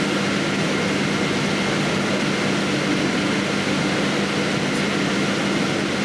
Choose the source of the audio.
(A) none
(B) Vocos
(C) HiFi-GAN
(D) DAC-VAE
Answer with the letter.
A